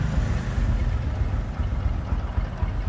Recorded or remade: recorded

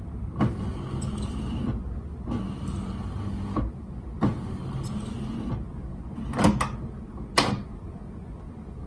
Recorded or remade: recorded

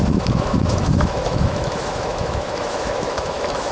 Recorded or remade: remade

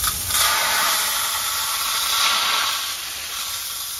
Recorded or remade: remade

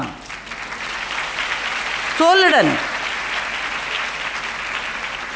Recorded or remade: recorded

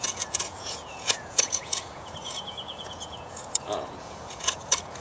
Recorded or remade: remade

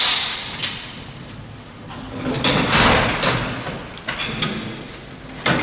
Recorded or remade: recorded